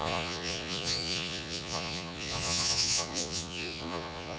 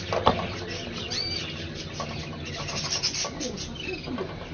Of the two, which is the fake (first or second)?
first